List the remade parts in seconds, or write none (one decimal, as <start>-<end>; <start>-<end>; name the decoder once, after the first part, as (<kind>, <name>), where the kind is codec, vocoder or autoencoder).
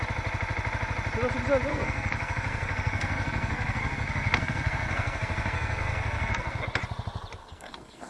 1.7-6.6 (codec, SNAC); 7.4-8.1